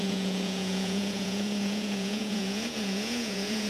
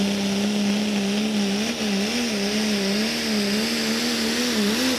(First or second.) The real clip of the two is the second